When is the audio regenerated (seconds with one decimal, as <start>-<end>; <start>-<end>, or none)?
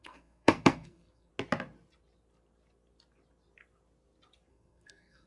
0.0-1.3; 4.5-5.3